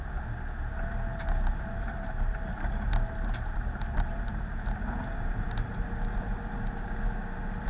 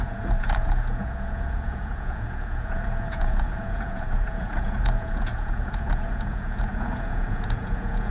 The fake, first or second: second